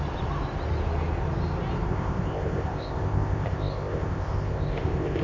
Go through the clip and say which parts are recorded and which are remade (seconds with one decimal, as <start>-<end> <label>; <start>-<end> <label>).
0.0-1.9 recorded; 1.9-5.2 remade